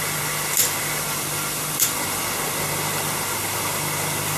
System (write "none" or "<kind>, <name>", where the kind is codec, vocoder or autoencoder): none